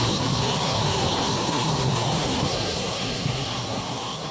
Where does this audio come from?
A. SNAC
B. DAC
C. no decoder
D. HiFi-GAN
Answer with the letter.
A